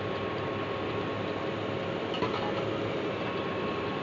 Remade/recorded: recorded